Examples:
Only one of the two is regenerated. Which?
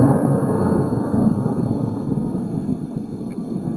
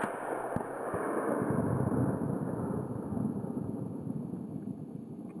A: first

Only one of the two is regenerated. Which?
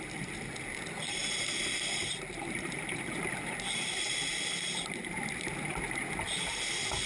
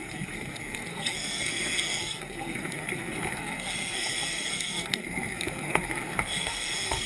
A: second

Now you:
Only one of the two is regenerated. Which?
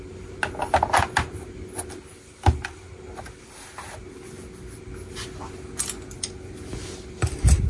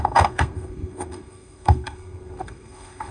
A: second